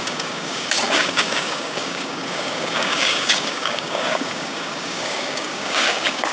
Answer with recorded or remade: remade